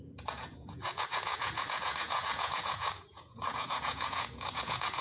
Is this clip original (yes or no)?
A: no